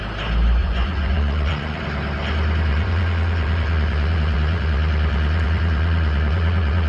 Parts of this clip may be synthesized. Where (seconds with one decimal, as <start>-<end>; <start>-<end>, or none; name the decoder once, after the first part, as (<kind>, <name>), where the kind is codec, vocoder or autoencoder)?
0.6-1.8 (vocoder, Vocos); 2.7-6.9